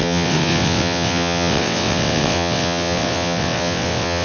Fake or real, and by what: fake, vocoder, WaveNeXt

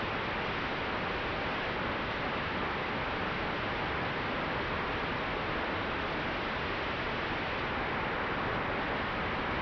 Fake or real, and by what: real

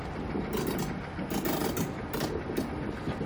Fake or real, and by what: real